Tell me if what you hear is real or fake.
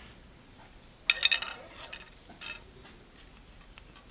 real